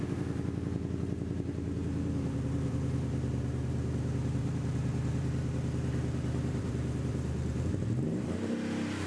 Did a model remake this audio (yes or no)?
yes